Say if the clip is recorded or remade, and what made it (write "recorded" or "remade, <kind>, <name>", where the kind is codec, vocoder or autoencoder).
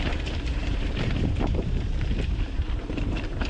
remade, vocoder, BigVGAN v2